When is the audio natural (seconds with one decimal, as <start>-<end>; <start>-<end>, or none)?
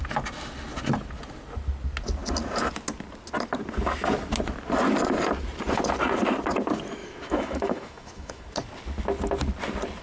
0.0-7.0; 8.4-10.0